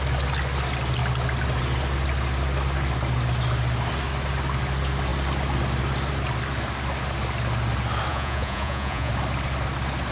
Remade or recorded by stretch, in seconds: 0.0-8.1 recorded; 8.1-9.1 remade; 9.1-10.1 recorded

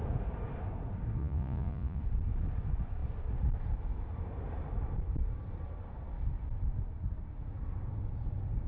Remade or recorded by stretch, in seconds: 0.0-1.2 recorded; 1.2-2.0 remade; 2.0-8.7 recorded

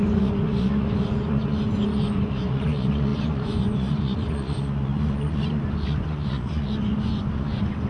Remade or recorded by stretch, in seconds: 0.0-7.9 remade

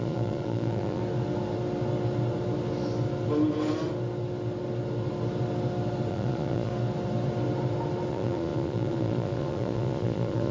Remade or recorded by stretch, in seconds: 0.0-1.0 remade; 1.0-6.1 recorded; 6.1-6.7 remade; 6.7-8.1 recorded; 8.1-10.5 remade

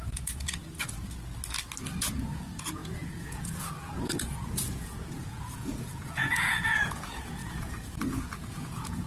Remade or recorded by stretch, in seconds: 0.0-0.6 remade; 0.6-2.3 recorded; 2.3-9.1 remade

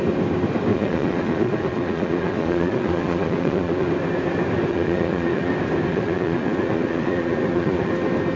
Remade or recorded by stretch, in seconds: 0.0-0.7 recorded; 0.7-3.9 remade; 3.9-4.7 recorded; 4.7-5.5 remade; 5.5-5.9 recorded; 5.9-7.9 remade; 7.9-8.4 recorded